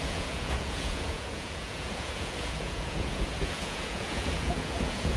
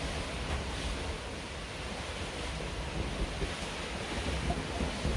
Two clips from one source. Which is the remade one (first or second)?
first